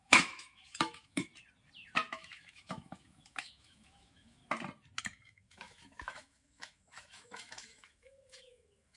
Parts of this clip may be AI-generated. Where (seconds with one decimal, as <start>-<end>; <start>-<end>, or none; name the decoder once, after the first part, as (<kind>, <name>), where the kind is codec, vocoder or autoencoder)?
0.0-1.3 (autoencoder, DAC-VAE); 2.1-4.4; 5.0-9.0